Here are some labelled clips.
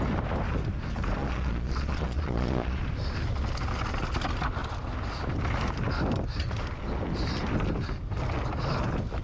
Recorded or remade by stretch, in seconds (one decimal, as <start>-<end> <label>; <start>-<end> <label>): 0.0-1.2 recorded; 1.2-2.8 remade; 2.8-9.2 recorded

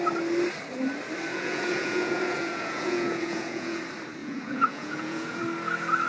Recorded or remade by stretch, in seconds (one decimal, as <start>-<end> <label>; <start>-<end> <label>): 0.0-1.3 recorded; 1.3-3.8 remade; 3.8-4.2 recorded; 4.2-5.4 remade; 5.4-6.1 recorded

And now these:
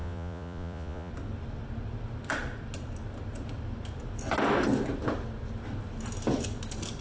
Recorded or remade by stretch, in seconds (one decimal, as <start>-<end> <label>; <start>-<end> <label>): 0.0-1.1 remade; 1.1-7.0 recorded